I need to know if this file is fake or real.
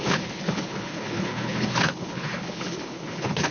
fake